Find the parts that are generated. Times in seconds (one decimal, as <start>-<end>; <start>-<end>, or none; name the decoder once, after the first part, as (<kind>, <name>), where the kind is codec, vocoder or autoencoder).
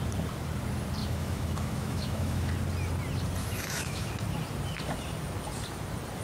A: 1.0-2.5 (autoencoder, DAC-VAE); 3.4-4.1